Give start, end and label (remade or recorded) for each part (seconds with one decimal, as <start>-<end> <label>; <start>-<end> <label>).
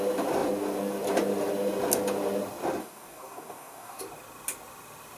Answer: 0.0-2.8 recorded; 2.8-4.0 remade; 4.0-5.2 recorded